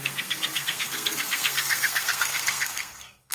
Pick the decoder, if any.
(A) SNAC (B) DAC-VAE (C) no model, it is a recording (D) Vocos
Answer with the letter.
A